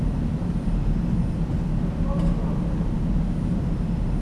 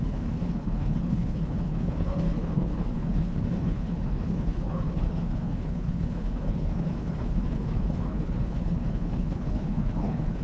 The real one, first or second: first